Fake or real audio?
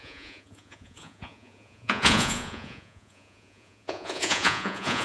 fake